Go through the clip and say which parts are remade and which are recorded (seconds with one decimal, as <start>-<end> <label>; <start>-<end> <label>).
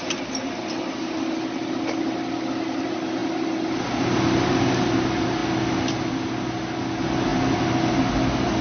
0.0-8.6 recorded